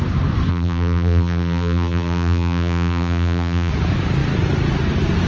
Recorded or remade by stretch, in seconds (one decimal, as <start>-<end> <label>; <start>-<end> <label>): 0.0-0.5 recorded; 0.5-3.7 remade; 3.7-5.3 recorded

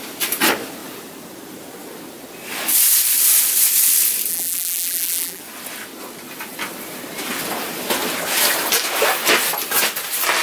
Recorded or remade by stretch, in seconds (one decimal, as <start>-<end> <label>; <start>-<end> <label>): 0.0-4.3 recorded; 4.3-5.4 remade; 5.4-10.4 recorded

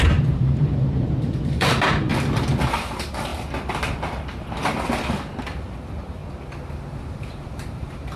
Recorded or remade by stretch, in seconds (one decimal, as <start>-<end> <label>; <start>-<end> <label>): 0.0-2.1 remade; 2.1-2.7 recorded; 2.7-3.3 remade; 3.3-4.5 recorded; 4.5-6.2 remade; 6.2-7.0 recorded; 7.0-8.2 remade

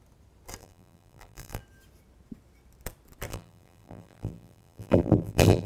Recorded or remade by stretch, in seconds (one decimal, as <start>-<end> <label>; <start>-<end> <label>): 0.0-0.6 recorded; 0.6-1.6 remade; 1.6-3.3 recorded; 3.3-5.7 remade

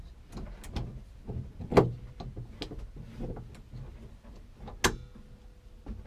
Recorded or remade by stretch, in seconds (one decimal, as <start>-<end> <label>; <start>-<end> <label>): 0.0-6.1 recorded

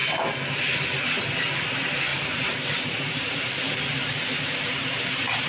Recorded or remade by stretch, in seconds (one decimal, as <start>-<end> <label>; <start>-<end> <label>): 0.0-2.1 recorded; 2.1-5.5 remade

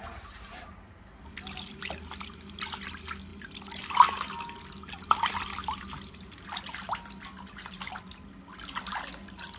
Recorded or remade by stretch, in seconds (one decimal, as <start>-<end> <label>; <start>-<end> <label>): 0.0-9.6 recorded

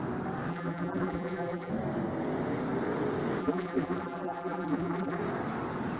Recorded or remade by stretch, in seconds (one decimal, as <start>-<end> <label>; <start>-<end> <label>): 0.0-0.5 recorded; 0.5-1.7 remade; 1.7-3.4 recorded; 3.4-5.2 remade; 5.2-6.0 recorded